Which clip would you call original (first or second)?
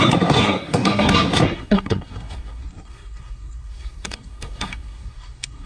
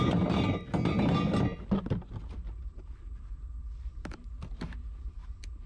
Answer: second